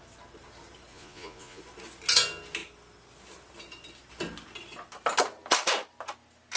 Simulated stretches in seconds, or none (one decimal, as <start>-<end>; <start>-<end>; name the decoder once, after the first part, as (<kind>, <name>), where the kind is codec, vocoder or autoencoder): 0.9-1.6 (vocoder, Vocos)